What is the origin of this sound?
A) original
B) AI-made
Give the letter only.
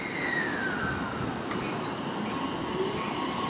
A